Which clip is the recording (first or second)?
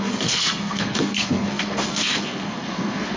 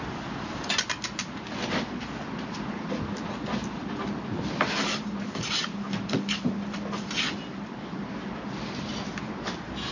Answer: second